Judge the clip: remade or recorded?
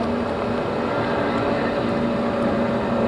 recorded